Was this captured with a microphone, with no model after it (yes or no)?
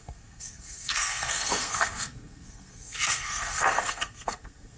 no